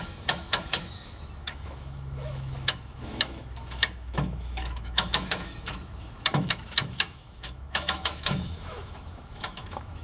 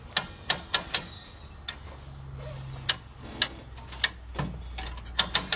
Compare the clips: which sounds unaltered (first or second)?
second